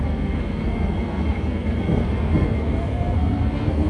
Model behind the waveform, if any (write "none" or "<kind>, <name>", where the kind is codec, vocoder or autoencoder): codec, SNAC